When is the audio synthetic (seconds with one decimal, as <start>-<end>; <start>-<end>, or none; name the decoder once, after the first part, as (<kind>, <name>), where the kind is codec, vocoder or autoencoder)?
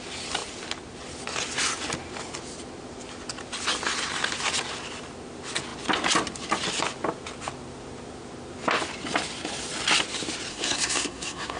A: 10.5-11.6 (codec, SNAC)